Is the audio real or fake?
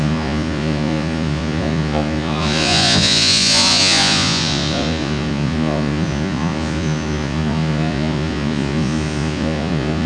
fake